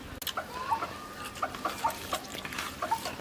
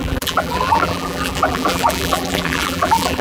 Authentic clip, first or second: first